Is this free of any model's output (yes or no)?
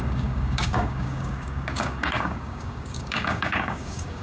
no